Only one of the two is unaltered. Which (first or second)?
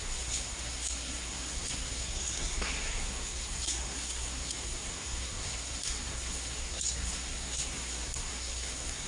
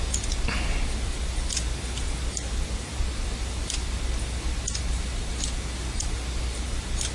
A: second